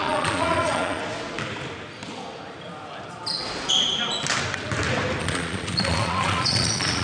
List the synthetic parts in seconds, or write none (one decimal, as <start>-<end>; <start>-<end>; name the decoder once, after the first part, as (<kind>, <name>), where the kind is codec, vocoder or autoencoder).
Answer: 0.0-1.0 (vocoder, Vocos); 5.2-7.0